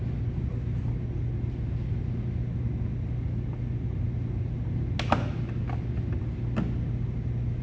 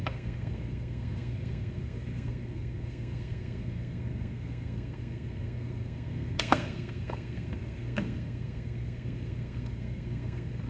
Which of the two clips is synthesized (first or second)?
second